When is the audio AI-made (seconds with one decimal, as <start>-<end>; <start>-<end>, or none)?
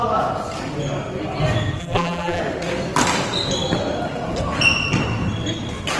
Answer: 1.8-2.4